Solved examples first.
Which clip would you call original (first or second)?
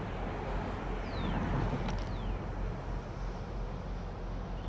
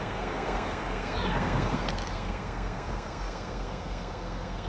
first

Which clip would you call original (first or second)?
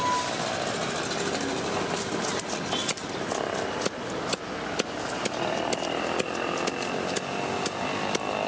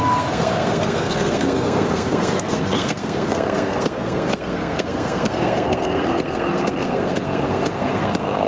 first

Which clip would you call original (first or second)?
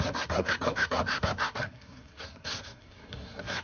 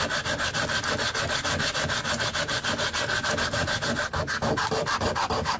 second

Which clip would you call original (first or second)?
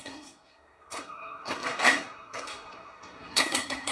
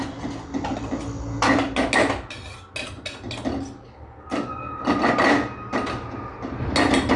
second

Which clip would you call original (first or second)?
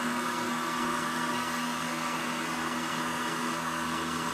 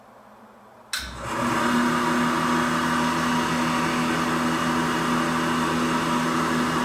second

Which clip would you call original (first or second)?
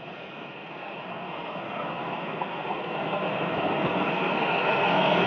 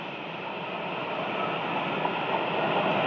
second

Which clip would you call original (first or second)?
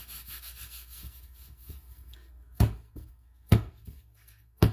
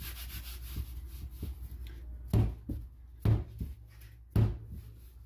second